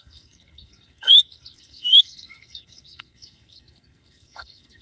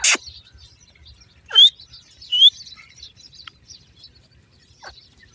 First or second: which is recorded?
second